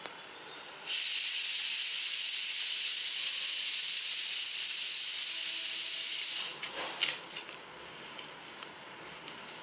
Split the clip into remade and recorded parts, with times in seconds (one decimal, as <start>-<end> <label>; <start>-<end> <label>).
0.0-9.6 remade